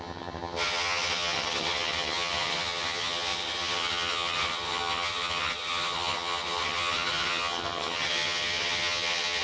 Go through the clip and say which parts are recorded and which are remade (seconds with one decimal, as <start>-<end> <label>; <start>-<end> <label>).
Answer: 0.0-9.4 remade